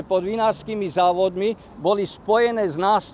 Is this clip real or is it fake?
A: real